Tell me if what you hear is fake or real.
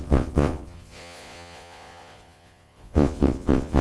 fake